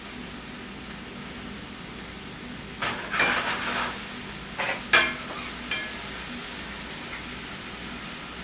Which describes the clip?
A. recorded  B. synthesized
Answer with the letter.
A